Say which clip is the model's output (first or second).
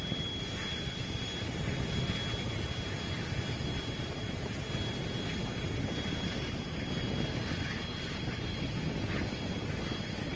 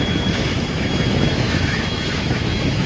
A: second